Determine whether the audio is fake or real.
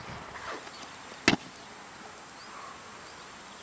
real